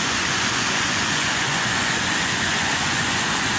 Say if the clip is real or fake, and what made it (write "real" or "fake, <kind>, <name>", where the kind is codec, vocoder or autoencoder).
fake, vocoder, Vocos